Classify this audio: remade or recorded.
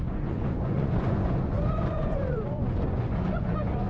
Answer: remade